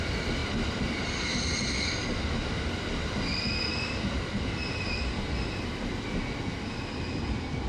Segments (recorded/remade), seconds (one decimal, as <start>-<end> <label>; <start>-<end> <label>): 0.0-7.7 recorded